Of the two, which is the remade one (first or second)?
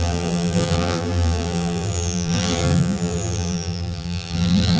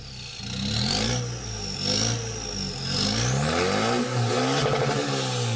first